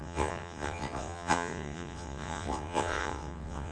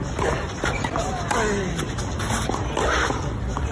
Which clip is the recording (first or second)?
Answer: second